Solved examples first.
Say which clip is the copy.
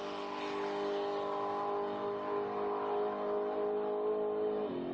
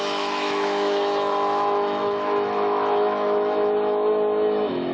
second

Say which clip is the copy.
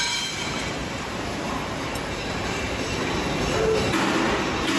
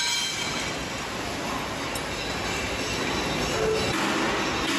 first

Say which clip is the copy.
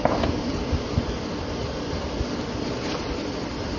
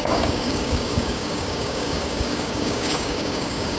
second